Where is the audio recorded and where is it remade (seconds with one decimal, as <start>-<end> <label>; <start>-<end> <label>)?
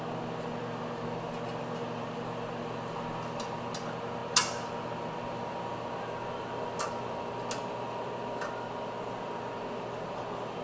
0.0-10.6 recorded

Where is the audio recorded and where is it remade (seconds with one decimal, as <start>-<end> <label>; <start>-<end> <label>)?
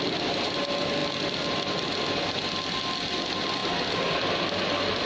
0.0-5.1 recorded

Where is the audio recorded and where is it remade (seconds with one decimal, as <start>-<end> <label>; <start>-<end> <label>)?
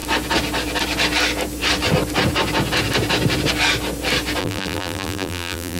0.0-4.4 recorded; 4.4-5.8 remade